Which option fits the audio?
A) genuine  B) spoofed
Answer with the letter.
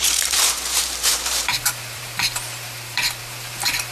B